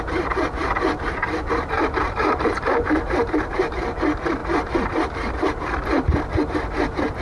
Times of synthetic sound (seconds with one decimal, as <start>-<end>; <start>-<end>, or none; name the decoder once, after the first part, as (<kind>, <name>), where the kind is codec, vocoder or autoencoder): 1.2-3.0 (vocoder, BigVGAN v2)